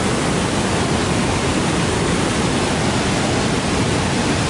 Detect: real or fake real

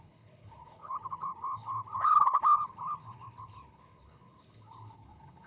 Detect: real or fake fake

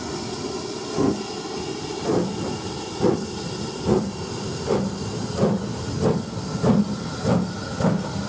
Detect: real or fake real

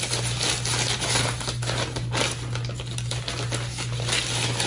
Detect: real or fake real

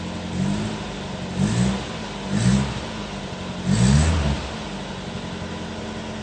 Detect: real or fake real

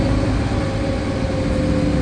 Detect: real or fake real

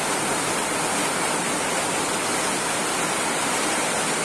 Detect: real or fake real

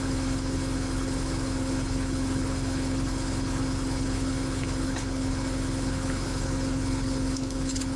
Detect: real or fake fake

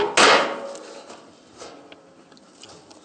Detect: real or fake real